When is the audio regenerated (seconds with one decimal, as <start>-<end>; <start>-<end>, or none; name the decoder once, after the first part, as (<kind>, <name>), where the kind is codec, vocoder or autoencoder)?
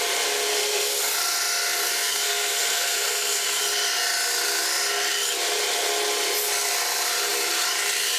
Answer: 0.5-1.1 (codec, SNAC); 1.9-3.6